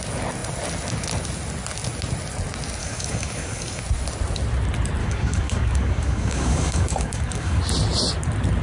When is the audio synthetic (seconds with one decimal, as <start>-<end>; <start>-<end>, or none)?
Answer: 2.8-3.8; 5.0-7.6